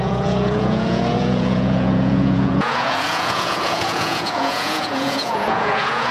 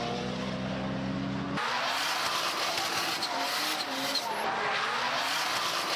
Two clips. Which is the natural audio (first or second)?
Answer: second